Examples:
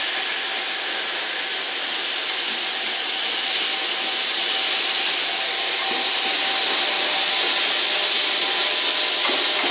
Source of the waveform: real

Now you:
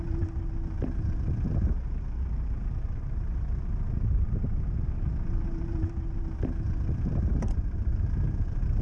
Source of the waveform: fake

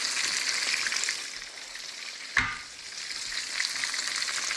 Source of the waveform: real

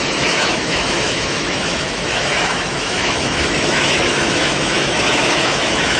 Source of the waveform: fake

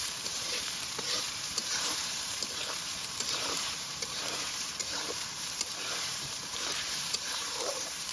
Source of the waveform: fake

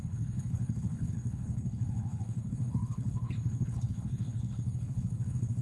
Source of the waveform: fake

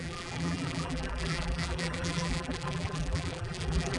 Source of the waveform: fake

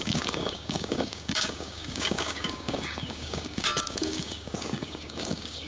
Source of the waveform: fake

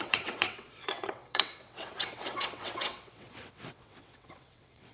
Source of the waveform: fake